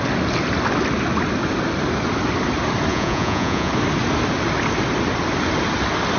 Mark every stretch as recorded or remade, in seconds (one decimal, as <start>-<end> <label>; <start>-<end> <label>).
0.0-2.9 recorded; 2.9-3.7 remade; 3.7-6.2 recorded

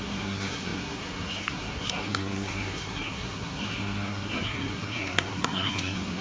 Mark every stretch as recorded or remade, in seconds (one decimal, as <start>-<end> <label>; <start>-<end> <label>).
0.0-6.2 remade

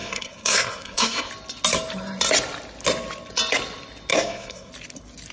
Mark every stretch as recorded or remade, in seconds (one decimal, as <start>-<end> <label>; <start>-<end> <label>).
0.0-1.3 remade; 1.3-4.1 recorded; 4.1-4.7 remade; 4.7-5.3 recorded

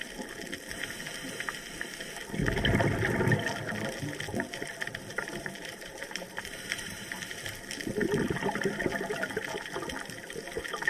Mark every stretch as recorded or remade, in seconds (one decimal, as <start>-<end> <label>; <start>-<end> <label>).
0.0-5.1 recorded; 5.1-7.4 remade; 7.4-10.9 recorded

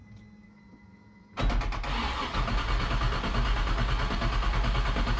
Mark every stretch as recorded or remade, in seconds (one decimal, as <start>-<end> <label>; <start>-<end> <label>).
0.0-5.2 recorded

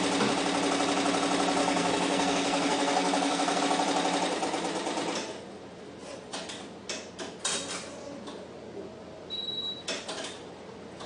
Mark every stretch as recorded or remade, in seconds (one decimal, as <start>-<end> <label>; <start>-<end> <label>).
0.0-1.6 recorded; 1.6-3.6 remade; 3.6-11.1 recorded

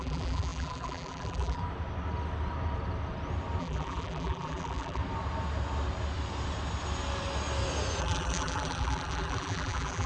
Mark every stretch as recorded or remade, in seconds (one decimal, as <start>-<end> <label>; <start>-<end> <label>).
0.0-1.6 remade; 1.6-3.6 recorded; 3.6-5.0 remade; 5.0-8.0 recorded; 8.0-10.1 remade